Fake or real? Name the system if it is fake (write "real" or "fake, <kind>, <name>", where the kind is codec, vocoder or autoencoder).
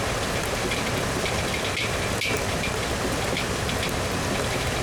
real